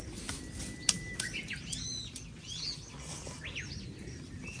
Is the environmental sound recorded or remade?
recorded